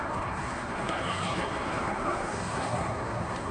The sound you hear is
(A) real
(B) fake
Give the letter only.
B